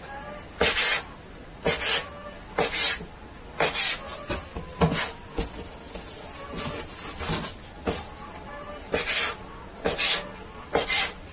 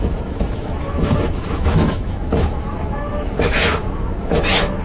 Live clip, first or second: first